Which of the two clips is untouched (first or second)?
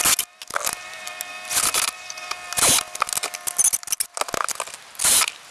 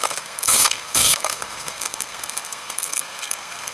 first